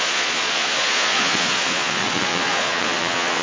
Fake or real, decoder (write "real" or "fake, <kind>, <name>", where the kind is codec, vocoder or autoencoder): fake, vocoder, Vocos